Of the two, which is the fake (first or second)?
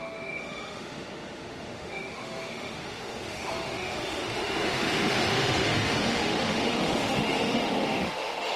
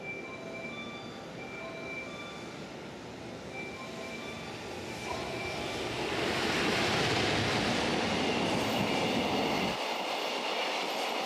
first